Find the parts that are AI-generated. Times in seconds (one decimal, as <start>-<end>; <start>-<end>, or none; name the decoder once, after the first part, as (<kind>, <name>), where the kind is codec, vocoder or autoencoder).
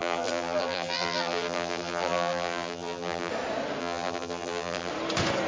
0.0-3.3 (vocoder, BigVGAN v2); 3.8-4.9